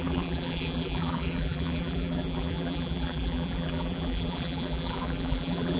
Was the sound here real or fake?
fake